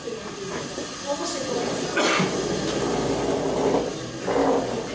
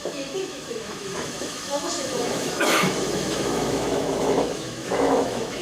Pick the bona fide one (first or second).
first